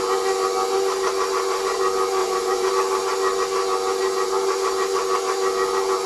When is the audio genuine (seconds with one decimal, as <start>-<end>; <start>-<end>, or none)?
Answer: 0.0-2.2; 2.7-6.1